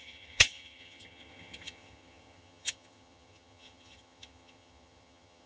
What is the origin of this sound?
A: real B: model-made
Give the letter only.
B